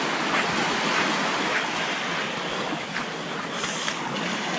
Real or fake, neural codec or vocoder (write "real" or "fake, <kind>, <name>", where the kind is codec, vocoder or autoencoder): real